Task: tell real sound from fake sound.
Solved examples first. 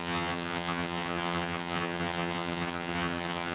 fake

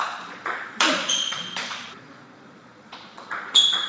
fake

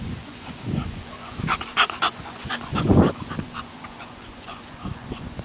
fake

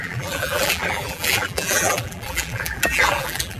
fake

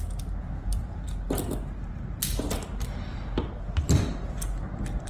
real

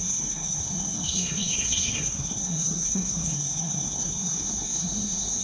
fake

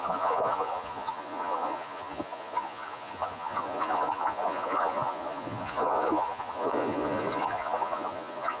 fake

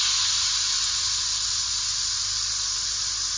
real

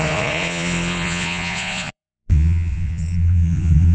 fake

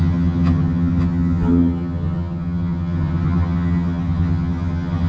fake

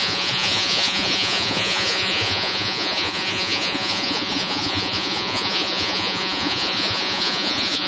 fake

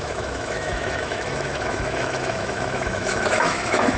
fake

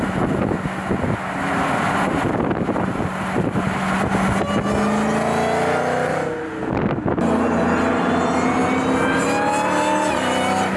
real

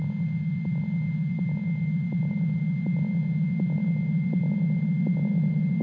real